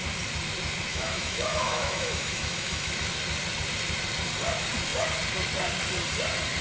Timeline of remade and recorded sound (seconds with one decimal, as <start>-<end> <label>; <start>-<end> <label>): 0.0-0.9 recorded; 0.9-2.9 remade; 2.9-6.6 recorded